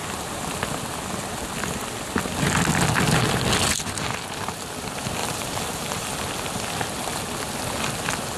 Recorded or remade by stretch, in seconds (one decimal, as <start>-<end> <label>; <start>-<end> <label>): 0.0-5.2 recorded; 5.2-6.2 remade; 6.2-8.4 recorded